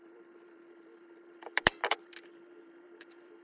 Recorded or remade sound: remade